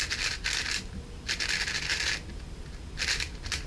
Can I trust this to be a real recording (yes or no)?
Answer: yes